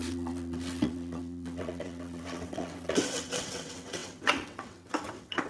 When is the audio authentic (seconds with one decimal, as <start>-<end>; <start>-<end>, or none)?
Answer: none